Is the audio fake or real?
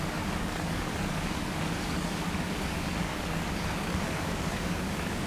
fake